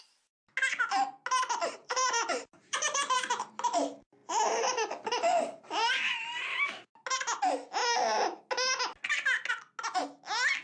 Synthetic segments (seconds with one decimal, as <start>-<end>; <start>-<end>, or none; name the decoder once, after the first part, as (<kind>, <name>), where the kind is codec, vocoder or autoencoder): 1.8-3.5 (vocoder, BigVGAN v2); 4.2-6.6